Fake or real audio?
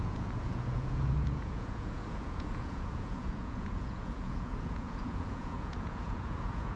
fake